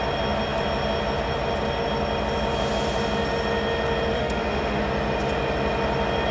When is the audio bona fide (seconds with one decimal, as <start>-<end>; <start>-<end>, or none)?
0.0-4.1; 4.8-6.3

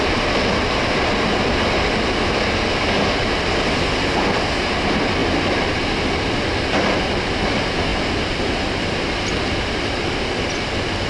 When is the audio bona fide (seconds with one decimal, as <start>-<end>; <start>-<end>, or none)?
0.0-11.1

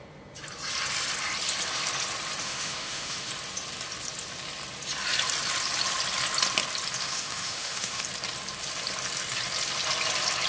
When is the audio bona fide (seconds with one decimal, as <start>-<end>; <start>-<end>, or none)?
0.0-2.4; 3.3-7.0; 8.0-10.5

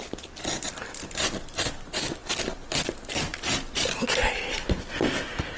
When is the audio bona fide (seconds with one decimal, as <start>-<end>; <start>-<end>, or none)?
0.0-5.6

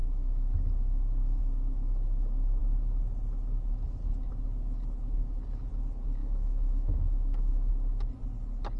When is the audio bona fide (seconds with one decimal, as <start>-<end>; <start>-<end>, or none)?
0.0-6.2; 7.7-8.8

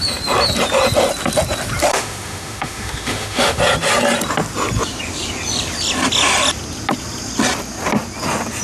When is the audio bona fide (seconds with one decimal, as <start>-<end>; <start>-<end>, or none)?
0.0-1.9; 3.6-8.6